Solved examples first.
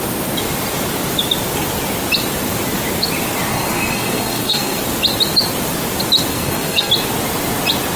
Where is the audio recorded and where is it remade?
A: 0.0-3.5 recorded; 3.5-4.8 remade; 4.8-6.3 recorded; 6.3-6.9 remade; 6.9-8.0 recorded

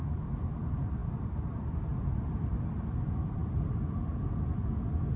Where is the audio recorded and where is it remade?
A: 0.0-5.2 recorded